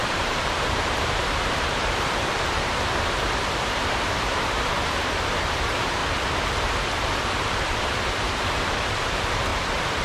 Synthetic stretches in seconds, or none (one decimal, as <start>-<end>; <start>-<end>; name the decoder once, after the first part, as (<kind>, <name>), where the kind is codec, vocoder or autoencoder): 0.0-6.0 (vocoder, BigVGAN v2); 8.2-9.5